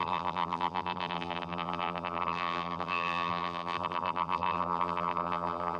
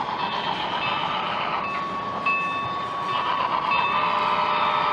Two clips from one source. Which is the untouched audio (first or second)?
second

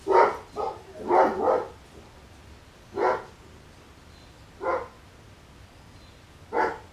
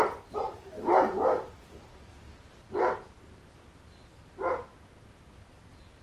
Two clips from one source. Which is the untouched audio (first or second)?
first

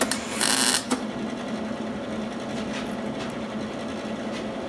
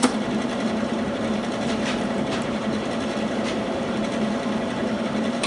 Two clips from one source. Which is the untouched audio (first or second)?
first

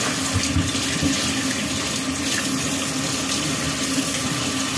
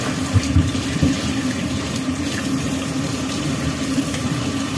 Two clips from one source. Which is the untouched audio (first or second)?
first